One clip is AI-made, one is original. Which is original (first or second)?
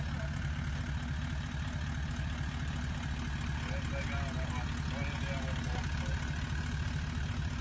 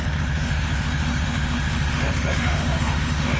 first